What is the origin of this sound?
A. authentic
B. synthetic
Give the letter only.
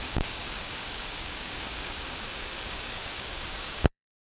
B